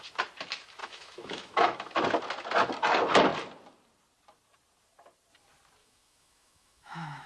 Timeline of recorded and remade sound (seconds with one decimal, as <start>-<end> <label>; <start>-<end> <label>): 0.0-0.8 recorded; 0.8-2.0 remade; 2.0-5.8 recorded; 5.8-7.3 remade

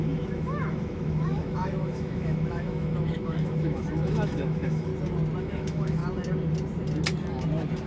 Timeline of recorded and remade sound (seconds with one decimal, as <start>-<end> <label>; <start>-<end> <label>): 0.0-4.9 remade; 4.9-5.4 recorded; 5.4-6.0 remade; 6.0-7.9 recorded

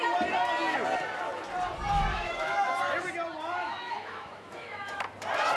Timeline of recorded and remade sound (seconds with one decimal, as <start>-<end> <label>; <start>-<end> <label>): 0.0-2.1 recorded; 2.1-2.8 remade; 2.8-3.6 recorded; 3.6-5.0 remade; 5.0-5.6 recorded